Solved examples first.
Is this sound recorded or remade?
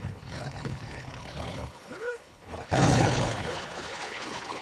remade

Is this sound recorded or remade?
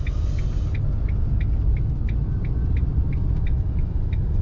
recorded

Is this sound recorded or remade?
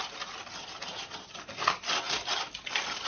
recorded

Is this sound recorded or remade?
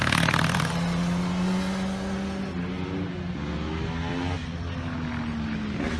recorded